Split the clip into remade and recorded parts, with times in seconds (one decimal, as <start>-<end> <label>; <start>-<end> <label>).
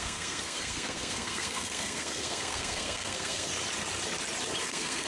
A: 0.0-3.5 remade; 3.5-4.6 recorded; 4.6-5.1 remade